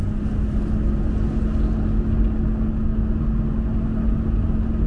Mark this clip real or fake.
real